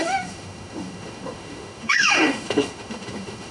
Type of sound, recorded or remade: remade